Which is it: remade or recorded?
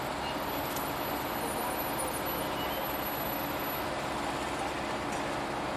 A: recorded